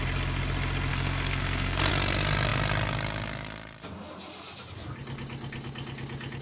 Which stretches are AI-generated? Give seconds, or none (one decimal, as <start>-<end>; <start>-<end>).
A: 0.9-1.9